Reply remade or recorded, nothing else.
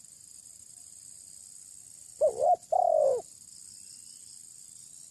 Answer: recorded